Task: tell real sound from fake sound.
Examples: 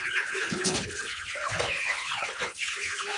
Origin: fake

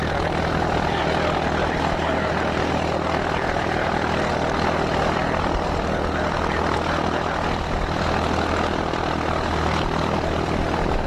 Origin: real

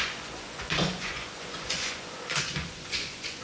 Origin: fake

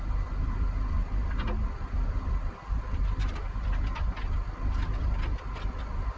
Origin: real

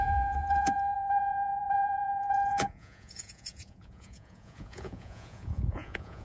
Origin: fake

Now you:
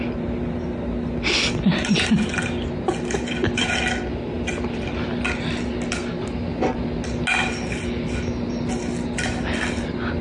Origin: real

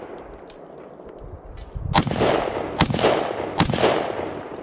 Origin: real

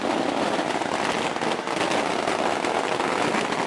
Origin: real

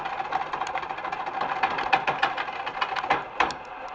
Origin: real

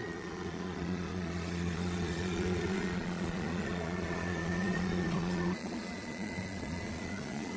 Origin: fake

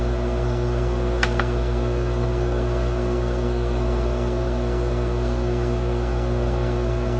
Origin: fake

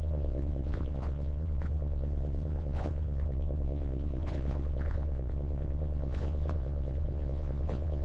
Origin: fake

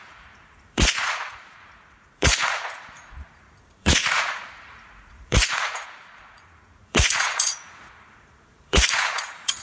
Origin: fake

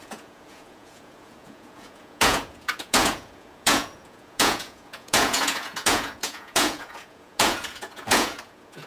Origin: fake